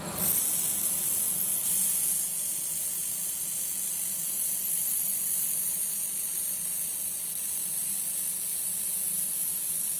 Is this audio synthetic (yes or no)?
no